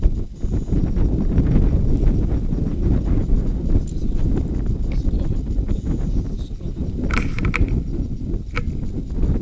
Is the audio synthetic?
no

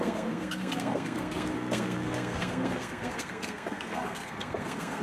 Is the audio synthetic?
yes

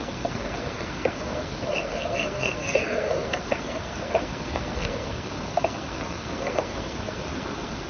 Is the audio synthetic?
yes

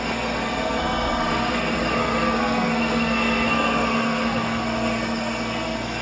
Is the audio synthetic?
yes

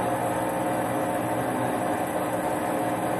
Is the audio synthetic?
no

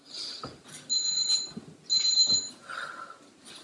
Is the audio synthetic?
no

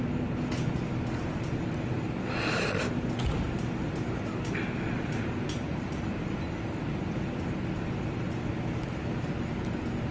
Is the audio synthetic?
no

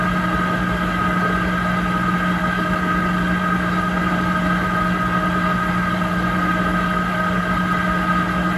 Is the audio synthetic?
no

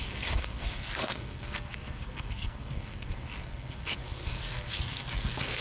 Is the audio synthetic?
yes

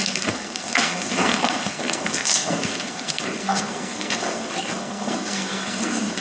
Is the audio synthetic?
yes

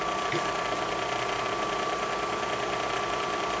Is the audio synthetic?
no